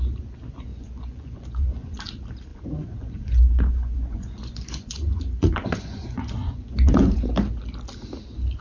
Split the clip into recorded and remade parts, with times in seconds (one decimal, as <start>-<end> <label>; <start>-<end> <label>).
0.0-0.7 recorded; 0.7-2.0 remade; 2.0-2.5 recorded; 2.5-7.3 remade; 7.3-8.6 recorded